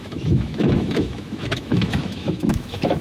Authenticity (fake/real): fake